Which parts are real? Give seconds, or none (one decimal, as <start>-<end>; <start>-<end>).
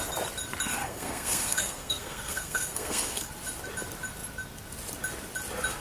0.0-0.8; 3.3-5.8